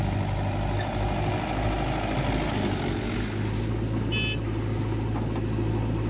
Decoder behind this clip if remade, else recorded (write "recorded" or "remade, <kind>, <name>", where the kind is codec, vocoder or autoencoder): recorded